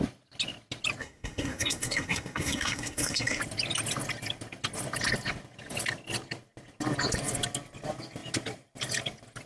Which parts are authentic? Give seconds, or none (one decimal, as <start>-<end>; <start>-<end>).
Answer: 0.0-1.0; 3.4-9.5